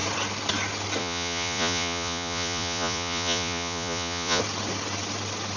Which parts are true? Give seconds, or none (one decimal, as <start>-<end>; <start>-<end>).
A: 0.0-1.0; 4.4-5.6